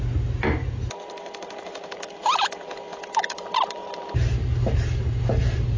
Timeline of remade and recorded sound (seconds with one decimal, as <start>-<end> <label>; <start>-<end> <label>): 0.0-0.6 recorded; 0.6-4.1 remade; 4.1-5.8 recorded